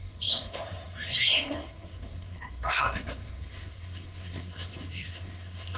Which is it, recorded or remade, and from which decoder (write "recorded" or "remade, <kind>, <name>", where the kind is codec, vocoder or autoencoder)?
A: remade, codec, SNAC